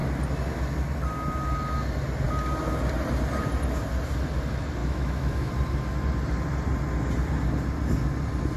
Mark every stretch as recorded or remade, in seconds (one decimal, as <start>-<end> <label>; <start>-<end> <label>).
0.0-4.8 recorded; 4.8-5.5 remade; 5.5-8.6 recorded

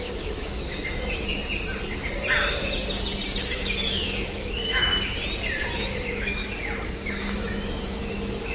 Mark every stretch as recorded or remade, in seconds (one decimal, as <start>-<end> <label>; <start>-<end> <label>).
0.0-1.4 remade; 1.4-3.5 recorded; 3.5-4.9 remade; 4.9-5.7 recorded; 5.7-6.4 remade; 6.4-7.1 recorded; 7.1-8.5 remade

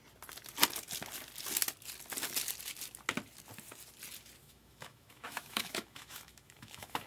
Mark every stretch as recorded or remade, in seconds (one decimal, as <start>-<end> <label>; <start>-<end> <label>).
0.0-4.4 recorded; 4.4-7.1 remade

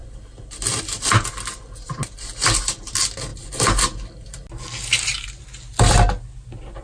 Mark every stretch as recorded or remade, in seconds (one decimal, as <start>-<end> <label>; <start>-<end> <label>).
0.0-6.8 recorded